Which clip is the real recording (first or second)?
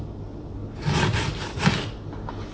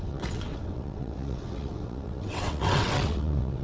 first